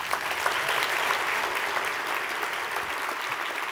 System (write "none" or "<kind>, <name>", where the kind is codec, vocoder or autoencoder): none